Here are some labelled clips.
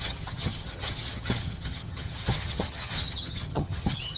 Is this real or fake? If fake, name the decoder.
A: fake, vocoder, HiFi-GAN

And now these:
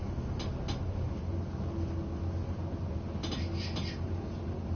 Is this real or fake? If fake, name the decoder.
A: real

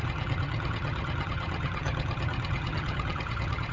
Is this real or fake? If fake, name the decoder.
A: fake, vocoder, HiFi-GAN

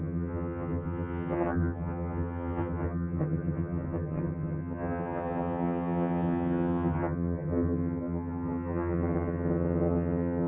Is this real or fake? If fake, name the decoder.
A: fake, vocoder, HiFi-GAN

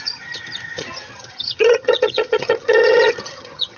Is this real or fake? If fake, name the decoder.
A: fake, vocoder, HiFi-GAN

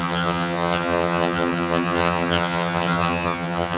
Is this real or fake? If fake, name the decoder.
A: fake, vocoder, HiFi-GAN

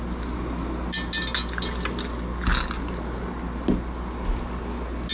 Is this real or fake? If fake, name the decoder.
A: real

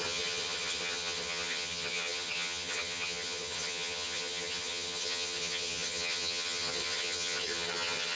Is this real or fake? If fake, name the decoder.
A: fake, vocoder, HiFi-GAN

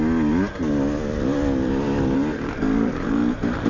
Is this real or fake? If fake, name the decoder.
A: real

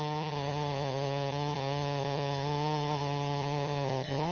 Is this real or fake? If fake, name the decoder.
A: fake, vocoder, HiFi-GAN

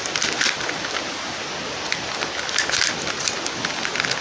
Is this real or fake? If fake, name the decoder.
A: real